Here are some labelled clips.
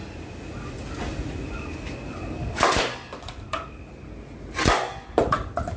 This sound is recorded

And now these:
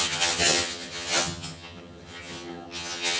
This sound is remade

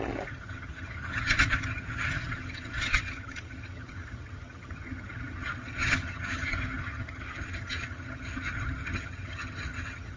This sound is remade